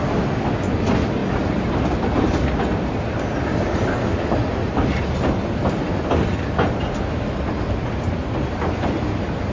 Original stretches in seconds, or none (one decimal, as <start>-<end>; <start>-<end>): 0.0-9.5